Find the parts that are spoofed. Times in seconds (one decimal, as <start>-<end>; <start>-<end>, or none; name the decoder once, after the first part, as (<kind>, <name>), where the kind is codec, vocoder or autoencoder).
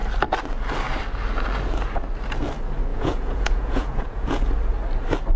2.9-4.4 (vocoder, Vocos)